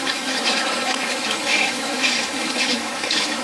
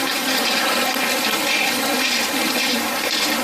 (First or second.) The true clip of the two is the second